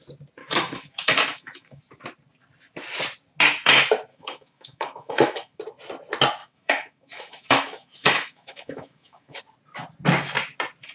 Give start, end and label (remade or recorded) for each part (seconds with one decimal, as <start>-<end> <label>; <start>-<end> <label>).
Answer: 0.0-0.4 recorded; 0.4-1.8 remade; 1.8-4.1 recorded; 4.1-5.6 remade; 5.6-6.4 recorded; 6.4-9.4 remade; 9.4-10.9 recorded